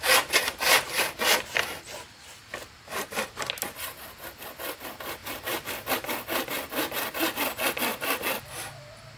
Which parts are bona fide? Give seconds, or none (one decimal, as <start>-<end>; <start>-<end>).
0.0-0.4; 1.1-5.2; 5.9-7.9; 8.7-9.2